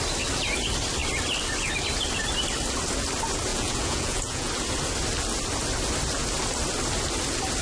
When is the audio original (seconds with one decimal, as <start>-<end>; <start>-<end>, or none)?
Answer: 0.0-3.5; 4.5-7.6